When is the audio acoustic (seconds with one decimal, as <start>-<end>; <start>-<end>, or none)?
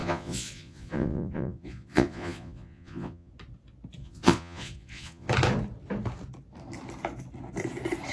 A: 3.3-4.0; 5.3-8.1